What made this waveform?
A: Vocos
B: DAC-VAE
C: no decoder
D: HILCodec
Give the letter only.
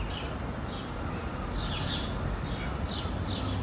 C